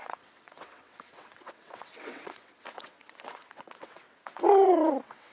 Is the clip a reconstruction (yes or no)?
yes